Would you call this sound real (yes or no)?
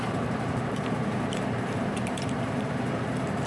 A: no